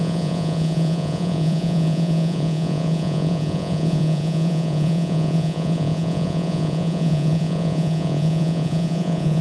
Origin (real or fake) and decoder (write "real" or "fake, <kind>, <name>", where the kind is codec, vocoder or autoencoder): fake, vocoder, Vocos